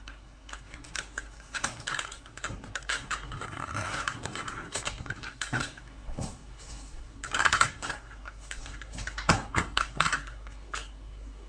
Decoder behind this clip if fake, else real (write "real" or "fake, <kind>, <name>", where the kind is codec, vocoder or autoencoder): fake, codec, SNAC